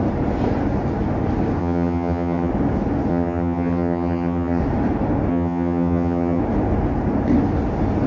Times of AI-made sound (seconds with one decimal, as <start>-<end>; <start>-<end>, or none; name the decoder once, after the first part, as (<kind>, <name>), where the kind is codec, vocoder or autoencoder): 1.6-2.5 (vocoder, HiFi-GAN); 3.1-4.6; 5.3-6.4